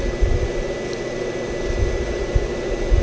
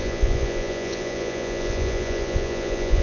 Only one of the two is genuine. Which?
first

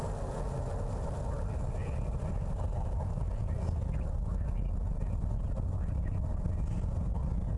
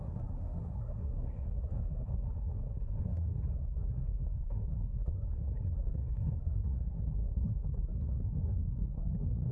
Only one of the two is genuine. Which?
first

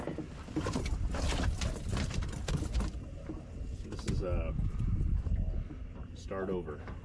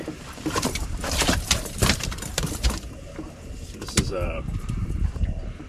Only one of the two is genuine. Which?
first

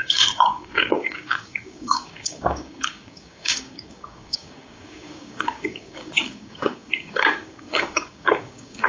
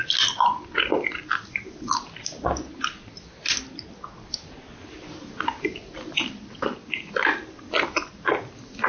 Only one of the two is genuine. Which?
second